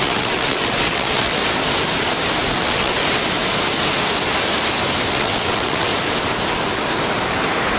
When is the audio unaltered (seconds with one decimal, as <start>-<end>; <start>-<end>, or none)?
1.4-2.5; 3.0-5.1; 5.9-7.8